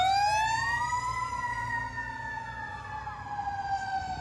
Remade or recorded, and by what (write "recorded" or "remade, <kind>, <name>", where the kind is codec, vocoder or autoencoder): recorded